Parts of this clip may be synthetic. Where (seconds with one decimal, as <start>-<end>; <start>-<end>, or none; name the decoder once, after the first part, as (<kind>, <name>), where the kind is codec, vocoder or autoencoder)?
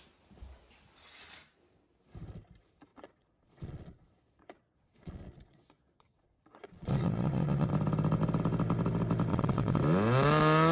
2.9-7.7 (vocoder, Vocos); 9.3-9.8